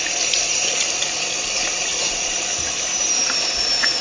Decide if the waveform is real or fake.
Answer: real